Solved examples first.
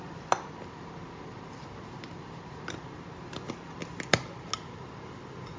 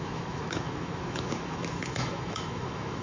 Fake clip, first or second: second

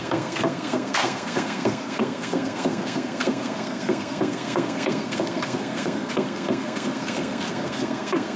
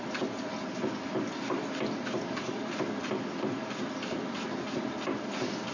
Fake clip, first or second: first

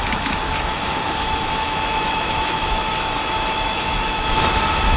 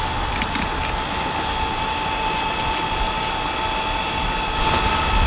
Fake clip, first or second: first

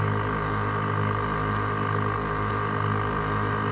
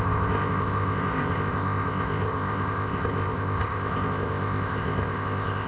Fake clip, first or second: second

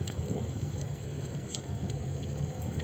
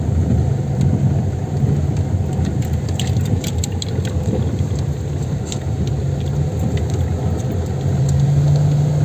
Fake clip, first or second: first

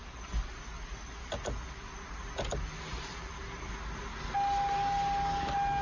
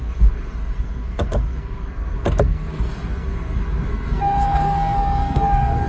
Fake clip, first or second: second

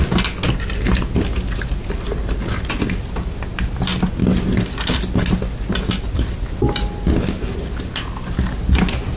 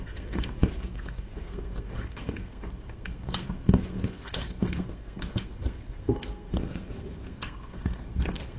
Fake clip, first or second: second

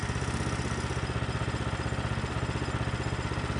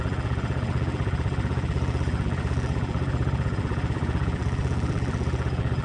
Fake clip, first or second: second